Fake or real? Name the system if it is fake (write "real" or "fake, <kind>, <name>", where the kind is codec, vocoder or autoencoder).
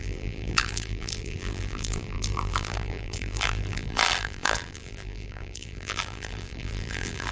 fake, vocoder, BigVGAN v2